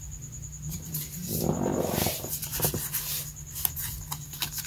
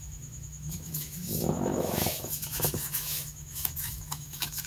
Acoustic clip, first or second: first